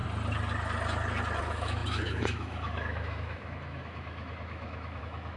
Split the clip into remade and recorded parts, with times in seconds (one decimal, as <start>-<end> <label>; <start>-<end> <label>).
0.0-1.4 recorded; 1.4-5.4 remade